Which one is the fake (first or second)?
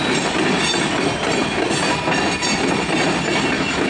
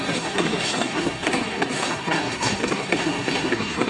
second